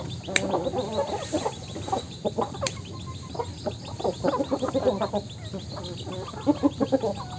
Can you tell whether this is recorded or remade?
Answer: recorded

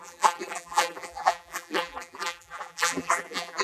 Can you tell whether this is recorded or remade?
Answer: remade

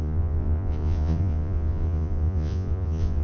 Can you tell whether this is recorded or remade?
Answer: remade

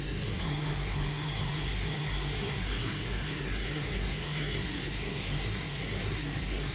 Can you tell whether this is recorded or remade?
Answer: remade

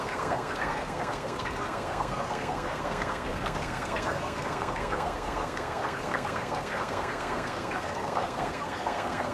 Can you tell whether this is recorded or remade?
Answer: remade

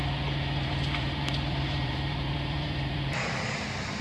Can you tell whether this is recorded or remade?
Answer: remade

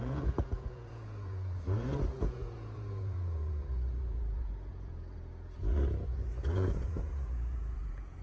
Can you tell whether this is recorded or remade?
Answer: remade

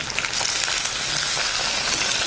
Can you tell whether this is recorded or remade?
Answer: recorded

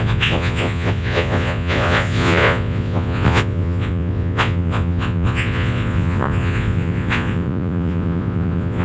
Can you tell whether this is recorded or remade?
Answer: remade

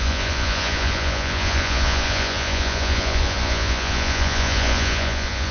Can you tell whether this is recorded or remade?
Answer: remade